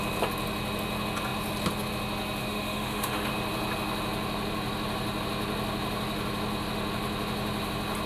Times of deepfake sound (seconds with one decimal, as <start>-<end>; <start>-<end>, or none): 2.4-3.3

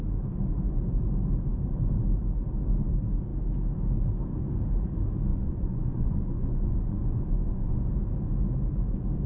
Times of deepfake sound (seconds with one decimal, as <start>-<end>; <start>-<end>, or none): 5.3-7.9

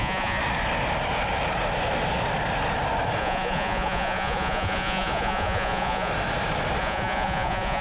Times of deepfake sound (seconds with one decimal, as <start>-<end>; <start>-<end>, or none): 0.0-0.4; 3.2-6.1; 6.8-7.8

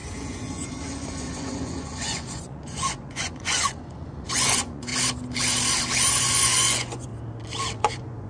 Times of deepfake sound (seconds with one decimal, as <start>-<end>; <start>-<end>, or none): 0.0-4.9; 6.1-7.1; 7.8-8.3